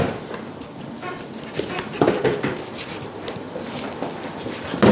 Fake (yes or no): no